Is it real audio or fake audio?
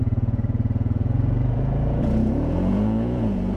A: fake